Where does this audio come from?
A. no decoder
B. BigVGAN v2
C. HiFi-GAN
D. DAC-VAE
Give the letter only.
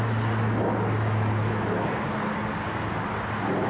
A